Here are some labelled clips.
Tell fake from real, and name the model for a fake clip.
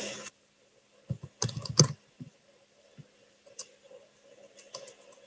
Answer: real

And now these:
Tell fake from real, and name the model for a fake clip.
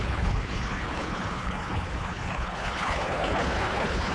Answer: fake, codec, HILCodec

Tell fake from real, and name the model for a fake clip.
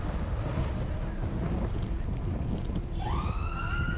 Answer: real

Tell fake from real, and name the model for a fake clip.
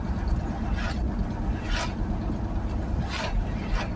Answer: real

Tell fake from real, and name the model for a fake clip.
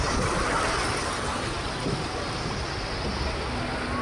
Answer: real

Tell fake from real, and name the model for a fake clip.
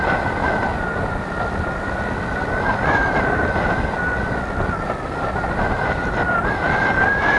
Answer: real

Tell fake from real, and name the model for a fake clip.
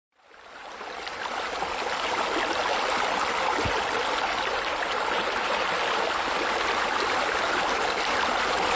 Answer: real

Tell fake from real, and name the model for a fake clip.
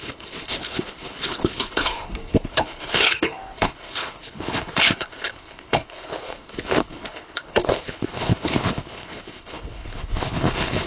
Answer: fake, codec, HILCodec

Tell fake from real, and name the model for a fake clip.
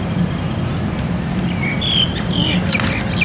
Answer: real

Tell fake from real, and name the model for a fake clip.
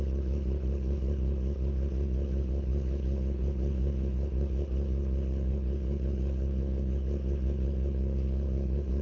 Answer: fake, codec, HILCodec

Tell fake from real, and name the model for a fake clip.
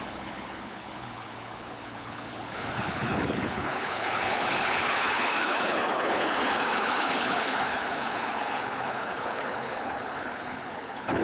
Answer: fake, codec, HILCodec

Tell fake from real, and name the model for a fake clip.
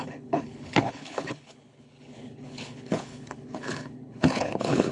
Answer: fake, codec, HILCodec